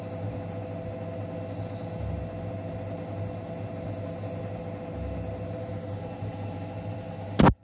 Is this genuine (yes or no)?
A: yes